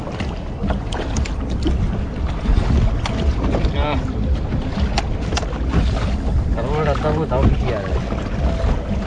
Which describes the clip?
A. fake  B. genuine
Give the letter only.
B